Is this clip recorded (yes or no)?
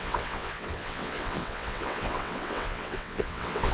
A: no